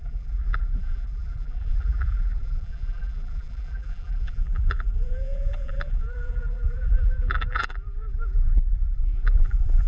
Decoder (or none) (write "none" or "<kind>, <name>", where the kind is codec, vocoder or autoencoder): vocoder, BigVGAN v2